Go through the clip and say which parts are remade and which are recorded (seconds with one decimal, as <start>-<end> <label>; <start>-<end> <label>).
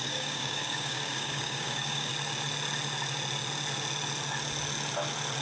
0.0-2.1 remade; 2.1-5.4 recorded